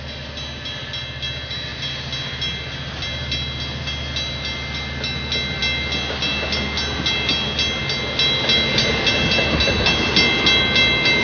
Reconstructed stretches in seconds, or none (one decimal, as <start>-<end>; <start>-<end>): none